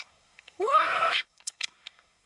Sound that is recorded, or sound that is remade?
remade